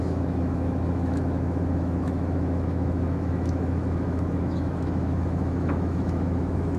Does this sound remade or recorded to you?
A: remade